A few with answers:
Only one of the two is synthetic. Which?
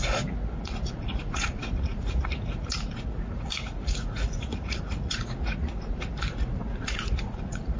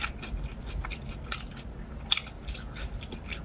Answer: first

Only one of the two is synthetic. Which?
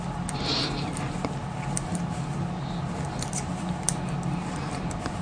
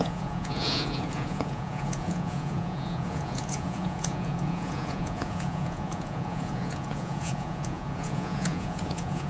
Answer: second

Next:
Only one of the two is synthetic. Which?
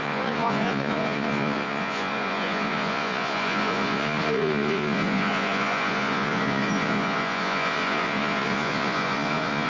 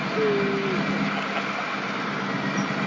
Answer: first